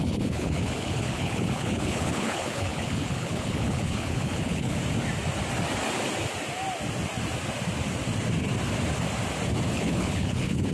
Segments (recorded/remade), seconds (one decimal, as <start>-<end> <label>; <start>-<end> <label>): 0.0-4.8 remade; 4.8-9.7 recorded; 9.7-10.7 remade